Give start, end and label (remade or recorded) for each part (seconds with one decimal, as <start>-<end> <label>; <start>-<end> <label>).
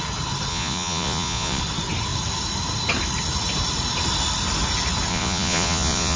0.0-0.5 recorded; 0.5-1.6 remade; 1.6-5.1 recorded; 5.1-6.2 remade